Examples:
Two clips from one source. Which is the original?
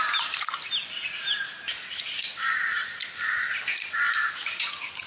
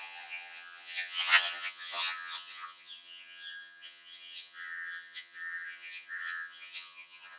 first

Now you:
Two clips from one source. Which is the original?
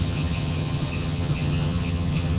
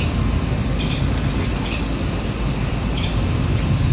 second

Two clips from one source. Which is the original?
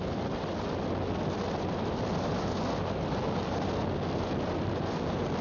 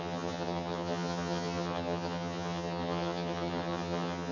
first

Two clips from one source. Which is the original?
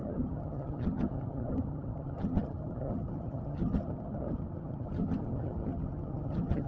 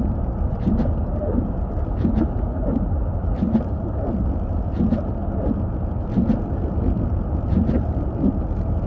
second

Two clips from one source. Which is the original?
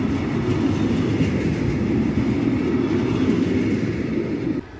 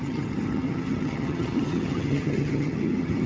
first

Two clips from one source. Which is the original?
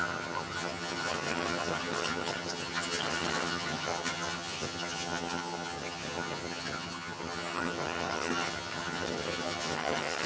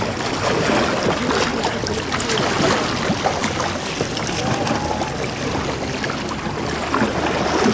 second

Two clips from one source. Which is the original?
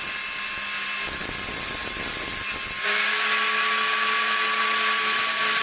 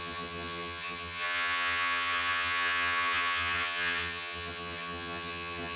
first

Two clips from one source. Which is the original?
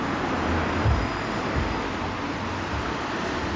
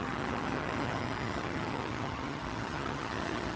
first